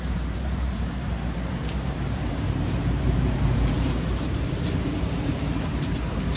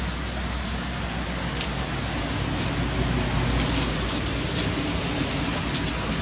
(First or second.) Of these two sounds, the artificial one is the first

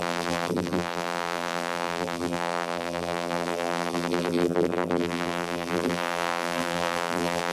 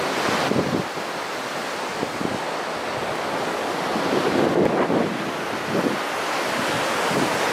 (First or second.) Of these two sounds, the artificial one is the first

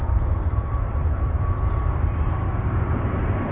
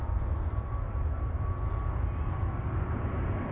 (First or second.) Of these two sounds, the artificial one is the first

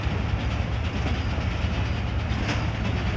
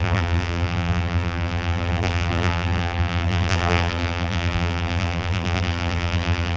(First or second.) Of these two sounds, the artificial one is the second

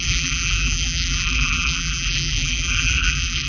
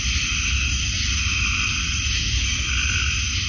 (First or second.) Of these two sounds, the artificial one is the first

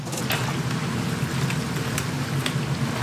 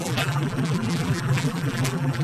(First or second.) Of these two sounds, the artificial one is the second